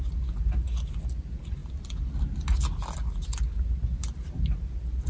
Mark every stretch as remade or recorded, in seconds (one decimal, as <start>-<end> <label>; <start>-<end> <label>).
0.0-5.1 recorded